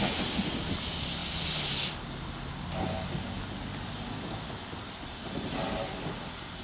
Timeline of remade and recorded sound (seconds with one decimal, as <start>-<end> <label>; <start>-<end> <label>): 0.0-6.6 recorded